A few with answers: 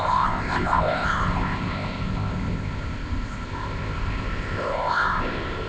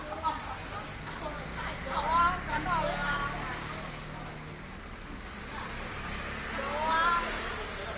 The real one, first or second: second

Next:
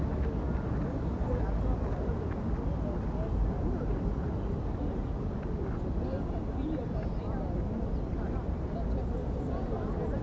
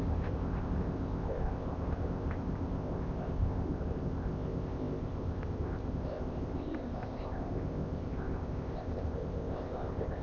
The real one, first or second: first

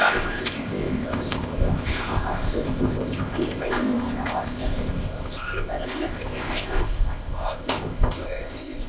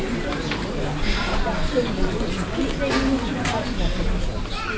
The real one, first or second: second